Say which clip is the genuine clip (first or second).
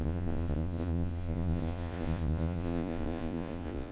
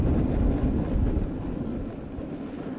second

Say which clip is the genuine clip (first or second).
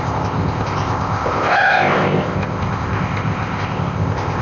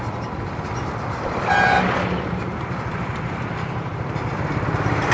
second